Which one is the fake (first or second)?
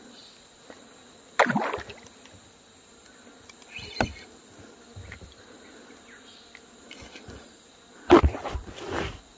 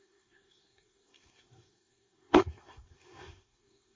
second